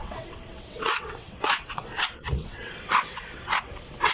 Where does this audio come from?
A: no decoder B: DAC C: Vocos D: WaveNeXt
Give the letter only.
D